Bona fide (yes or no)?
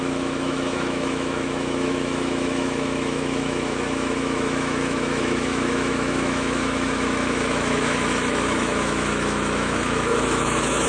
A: no